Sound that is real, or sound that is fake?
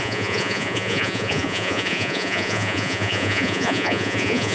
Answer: fake